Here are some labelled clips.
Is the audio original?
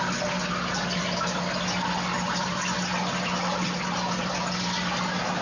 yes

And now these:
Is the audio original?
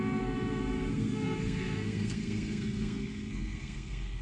no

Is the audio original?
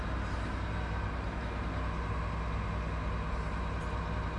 yes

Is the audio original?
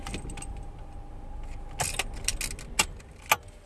yes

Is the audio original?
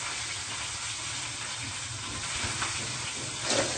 yes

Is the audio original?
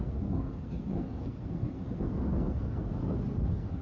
no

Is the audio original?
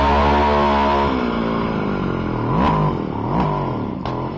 yes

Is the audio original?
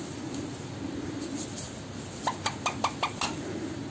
yes